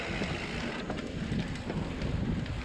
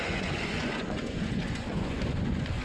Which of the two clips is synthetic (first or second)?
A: second